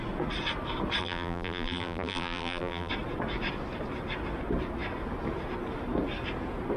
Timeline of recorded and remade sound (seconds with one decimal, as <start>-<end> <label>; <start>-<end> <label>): 0.0-1.0 recorded; 1.0-2.9 remade; 2.9-6.8 recorded